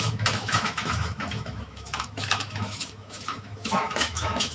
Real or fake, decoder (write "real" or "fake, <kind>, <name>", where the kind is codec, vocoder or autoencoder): fake, autoencoder, DAC-VAE